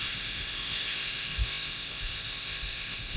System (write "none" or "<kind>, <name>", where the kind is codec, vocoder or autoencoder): codec, ZipCodec